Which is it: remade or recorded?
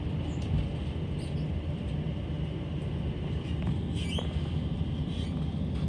recorded